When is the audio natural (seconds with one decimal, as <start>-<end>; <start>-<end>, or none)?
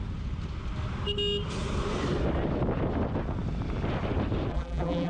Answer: 0.0-4.5